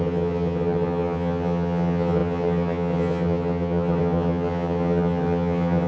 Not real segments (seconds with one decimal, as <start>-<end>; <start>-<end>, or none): 0.0-5.9